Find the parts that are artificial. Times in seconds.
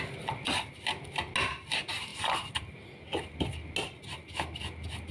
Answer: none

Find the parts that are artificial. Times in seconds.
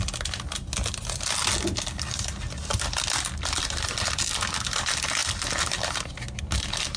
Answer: none